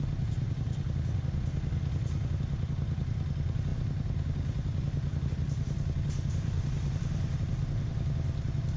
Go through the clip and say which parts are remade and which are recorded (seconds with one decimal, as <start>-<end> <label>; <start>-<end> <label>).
0.0-8.8 recorded